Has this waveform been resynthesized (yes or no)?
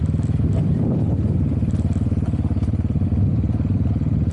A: no